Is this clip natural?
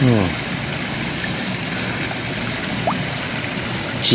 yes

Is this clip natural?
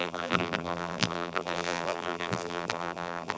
no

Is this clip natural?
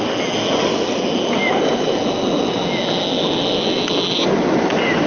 yes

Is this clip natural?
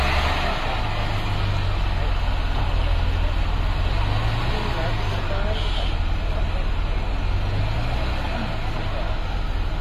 yes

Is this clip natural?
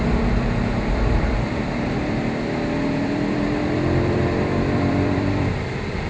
no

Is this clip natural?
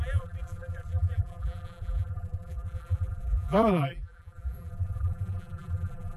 no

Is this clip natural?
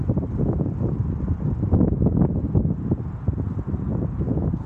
yes